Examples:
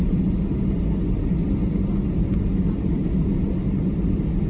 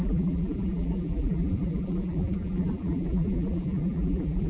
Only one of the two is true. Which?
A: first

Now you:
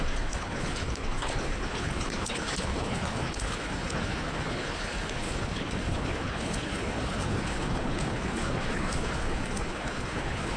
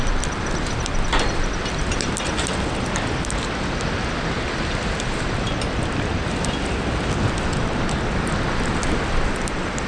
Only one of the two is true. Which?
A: second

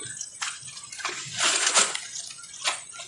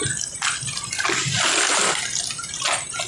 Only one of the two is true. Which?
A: second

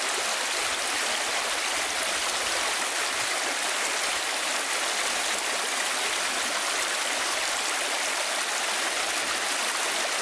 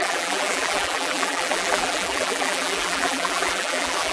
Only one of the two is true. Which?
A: first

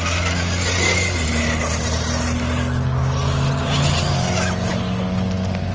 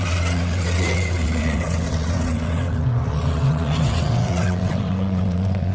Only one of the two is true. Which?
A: first